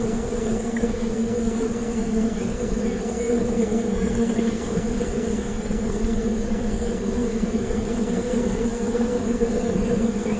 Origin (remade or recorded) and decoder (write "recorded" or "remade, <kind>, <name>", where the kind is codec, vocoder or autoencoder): remade, codec, SNAC